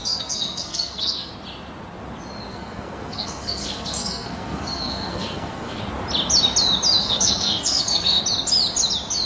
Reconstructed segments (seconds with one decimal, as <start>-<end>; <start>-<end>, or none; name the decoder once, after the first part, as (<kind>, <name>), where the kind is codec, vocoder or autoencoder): 0.0-1.3 (codec, SNAC); 2.5-5.8; 7.0-8.2